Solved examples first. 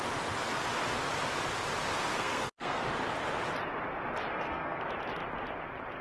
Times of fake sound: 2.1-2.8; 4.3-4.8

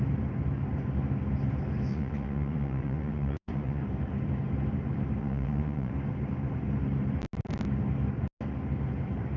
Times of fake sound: 1.9-3.8; 5.2-5.9